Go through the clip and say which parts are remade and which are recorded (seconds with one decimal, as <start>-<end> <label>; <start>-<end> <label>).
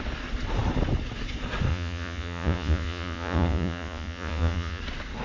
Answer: 0.0-1.7 recorded; 1.7-4.8 remade; 4.8-5.2 recorded